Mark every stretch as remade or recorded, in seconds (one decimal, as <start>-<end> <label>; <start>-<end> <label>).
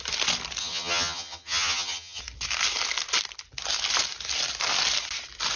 0.0-0.6 recorded; 0.6-2.2 remade; 2.2-5.6 recorded